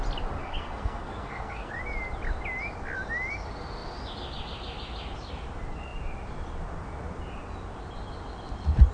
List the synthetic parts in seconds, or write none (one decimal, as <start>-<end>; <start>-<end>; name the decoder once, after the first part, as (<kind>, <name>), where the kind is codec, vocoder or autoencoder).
0.4-1.7 (codec, SNAC)